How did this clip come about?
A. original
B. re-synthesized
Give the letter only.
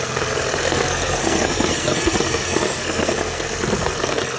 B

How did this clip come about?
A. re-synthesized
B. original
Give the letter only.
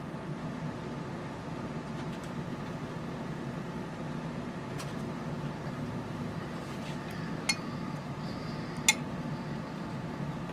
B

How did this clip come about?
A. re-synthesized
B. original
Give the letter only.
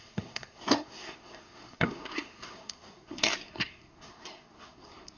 A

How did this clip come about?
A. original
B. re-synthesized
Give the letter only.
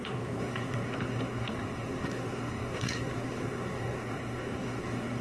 B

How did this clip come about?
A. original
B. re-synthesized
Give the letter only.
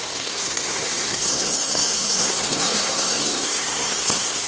B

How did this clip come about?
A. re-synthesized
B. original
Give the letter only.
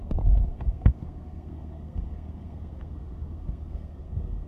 A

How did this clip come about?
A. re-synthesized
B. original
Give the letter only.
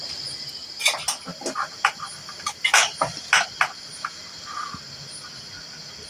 B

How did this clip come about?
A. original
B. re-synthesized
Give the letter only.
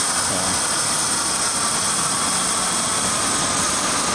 A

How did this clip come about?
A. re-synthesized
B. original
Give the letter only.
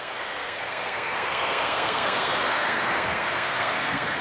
A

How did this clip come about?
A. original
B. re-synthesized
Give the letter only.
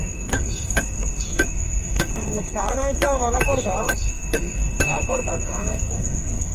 B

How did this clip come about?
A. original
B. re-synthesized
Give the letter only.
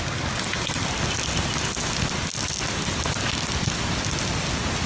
A